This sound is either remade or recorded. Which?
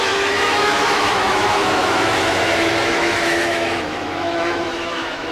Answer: remade